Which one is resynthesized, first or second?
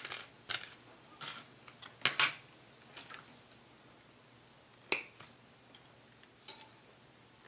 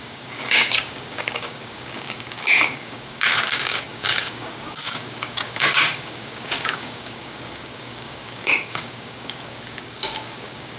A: second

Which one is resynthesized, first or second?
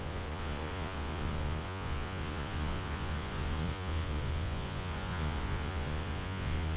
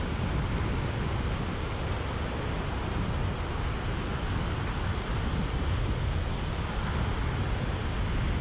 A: first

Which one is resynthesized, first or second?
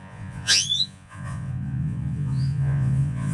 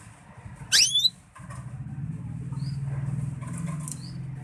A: first